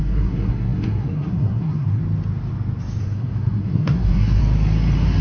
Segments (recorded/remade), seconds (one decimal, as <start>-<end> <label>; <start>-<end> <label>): 0.0-2.0 remade; 2.0-3.0 recorded; 3.0-4.4 remade; 4.4-5.2 recorded